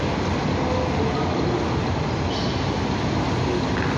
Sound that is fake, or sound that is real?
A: real